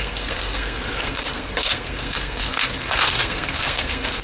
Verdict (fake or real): fake